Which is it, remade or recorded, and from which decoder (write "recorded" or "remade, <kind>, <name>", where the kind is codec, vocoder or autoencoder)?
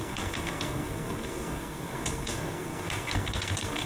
remade, codec, SNAC